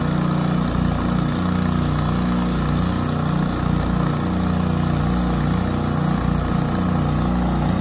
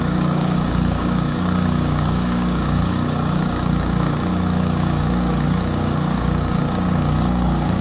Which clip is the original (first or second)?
first